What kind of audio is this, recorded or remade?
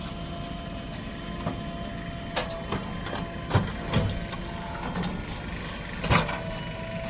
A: recorded